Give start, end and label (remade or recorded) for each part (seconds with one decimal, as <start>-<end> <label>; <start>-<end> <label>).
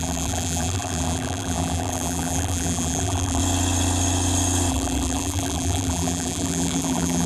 0.0-3.4 remade; 3.4-4.7 recorded; 4.7-7.3 remade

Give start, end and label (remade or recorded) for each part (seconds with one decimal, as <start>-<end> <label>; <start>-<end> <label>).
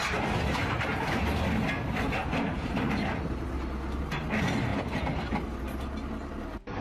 0.0-0.6 recorded; 0.6-1.2 remade; 1.2-2.2 recorded; 2.2-3.6 remade; 3.6-6.8 recorded